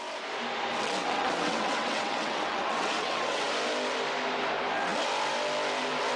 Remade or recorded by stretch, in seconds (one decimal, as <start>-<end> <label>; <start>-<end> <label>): 0.0-1.0 recorded; 1.0-3.5 remade; 3.5-6.2 recorded